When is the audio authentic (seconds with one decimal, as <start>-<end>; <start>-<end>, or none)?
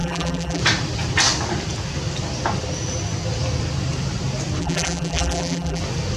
0.6-4.6; 5.8-6.2